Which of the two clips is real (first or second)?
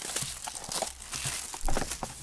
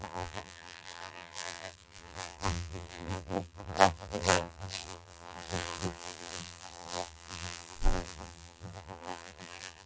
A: first